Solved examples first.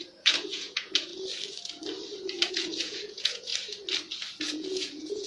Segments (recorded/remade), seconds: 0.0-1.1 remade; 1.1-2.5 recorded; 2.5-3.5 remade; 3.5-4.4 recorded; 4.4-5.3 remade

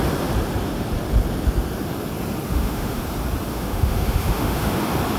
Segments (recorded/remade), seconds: 0.0-2.5 recorded; 2.5-3.0 remade; 3.0-3.5 recorded; 3.5-4.8 remade; 4.8-5.2 recorded

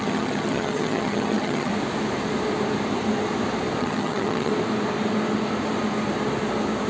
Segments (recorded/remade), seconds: 0.0-1.7 remade; 1.7-3.8 recorded; 3.8-4.5 remade; 4.5-6.9 recorded

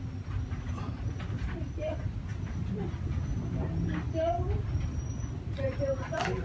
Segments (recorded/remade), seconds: 0.0-6.4 recorded

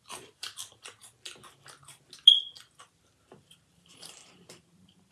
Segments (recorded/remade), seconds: 0.0-1.0 remade; 1.0-3.4 recorded; 3.4-5.1 remade

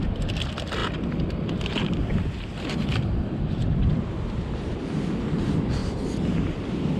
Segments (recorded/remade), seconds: 0.0-0.8 recorded; 0.8-4.4 remade; 4.4-5.8 recorded; 5.8-7.0 remade

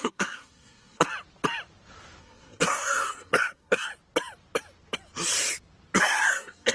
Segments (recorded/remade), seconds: 0.0-1.1 remade; 1.1-2.2 recorded; 2.2-3.9 remade; 3.9-6.0 recorded; 6.0-6.7 remade